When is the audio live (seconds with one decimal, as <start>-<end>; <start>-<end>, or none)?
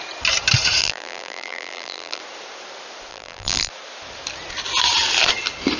0.0-0.8; 2.2-3.1; 3.7-5.8